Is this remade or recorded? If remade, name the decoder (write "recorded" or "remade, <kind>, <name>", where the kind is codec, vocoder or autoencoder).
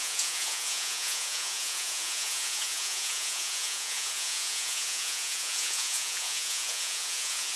remade, vocoder, Vocos